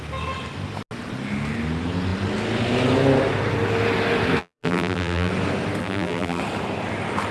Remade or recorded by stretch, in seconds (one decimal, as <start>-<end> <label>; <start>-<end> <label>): 0.0-4.4 recorded; 4.4-5.3 remade; 5.3-5.8 recorded; 5.8-6.4 remade; 6.4-7.3 recorded